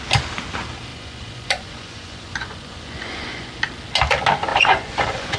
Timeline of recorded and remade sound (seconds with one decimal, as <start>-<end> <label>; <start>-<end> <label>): 0.0-0.9 recorded; 0.9-3.5 remade; 3.5-4.5 recorded; 4.5-5.4 remade

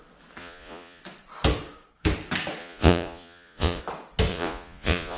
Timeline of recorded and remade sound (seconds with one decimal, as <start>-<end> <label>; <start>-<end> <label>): 0.0-0.4 recorded; 0.4-1.0 remade; 1.0-2.6 recorded; 2.6-3.8 remade; 3.8-4.3 recorded; 4.3-5.2 remade

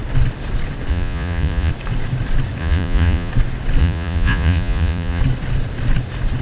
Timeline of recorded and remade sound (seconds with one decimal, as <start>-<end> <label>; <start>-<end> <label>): 0.0-0.9 recorded; 0.9-1.7 remade; 1.7-2.6 recorded; 2.6-3.3 remade; 3.3-3.8 recorded; 3.8-5.2 remade; 5.2-6.4 recorded

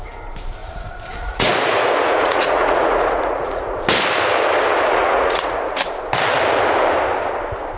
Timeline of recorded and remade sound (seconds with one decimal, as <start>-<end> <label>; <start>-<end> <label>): 0.0-0.6 recorded; 0.6-3.8 remade; 3.8-5.0 recorded; 5.0-5.8 remade; 5.8-7.8 recorded

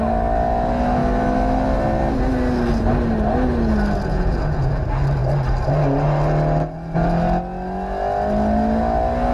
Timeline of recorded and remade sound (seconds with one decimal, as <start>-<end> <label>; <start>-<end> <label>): 0.0-4.1 recorded; 4.1-4.8 remade; 4.8-9.3 recorded